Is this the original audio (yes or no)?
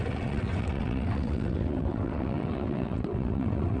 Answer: no